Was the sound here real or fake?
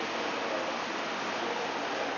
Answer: real